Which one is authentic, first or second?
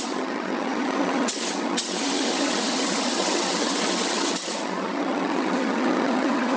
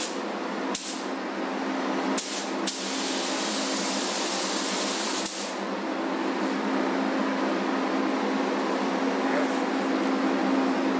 second